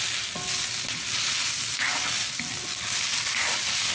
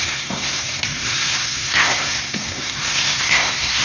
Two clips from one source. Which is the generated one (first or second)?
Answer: second